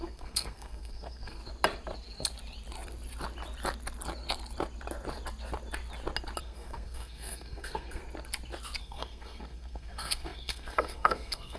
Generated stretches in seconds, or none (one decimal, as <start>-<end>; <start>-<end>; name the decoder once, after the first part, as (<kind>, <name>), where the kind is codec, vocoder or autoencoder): 0.0-1.4 (codec, SNAC); 6.4-8.0; 8.8-11.6

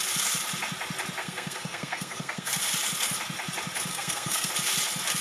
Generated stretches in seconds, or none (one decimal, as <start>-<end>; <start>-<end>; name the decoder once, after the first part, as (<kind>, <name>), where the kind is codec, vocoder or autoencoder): 1.2-2.6 (codec, SNAC); 3.9-4.5